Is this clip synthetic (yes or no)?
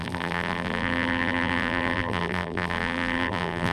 yes